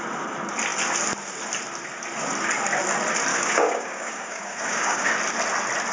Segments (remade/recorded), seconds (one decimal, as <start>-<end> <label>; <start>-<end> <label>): 0.0-3.3 recorded; 3.3-5.1 remade; 5.1-5.9 recorded

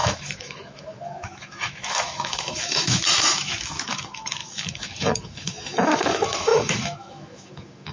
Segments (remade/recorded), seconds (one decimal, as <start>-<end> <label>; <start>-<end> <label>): 0.0-7.9 remade

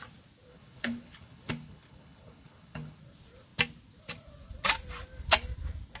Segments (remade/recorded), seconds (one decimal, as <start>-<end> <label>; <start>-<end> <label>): 0.0-0.5 recorded; 0.5-3.0 remade; 3.0-6.0 recorded

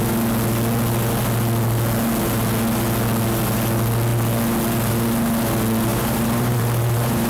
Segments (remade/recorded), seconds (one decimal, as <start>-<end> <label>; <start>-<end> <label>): 0.0-5.9 recorded; 5.9-7.3 remade

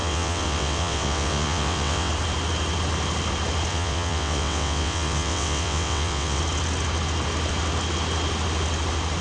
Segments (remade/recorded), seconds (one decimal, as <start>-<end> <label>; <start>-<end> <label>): 0.0-2.1 remade; 2.1-3.7 recorded; 3.7-6.4 remade; 6.4-9.2 recorded